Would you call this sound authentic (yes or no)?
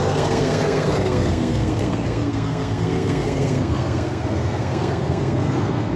no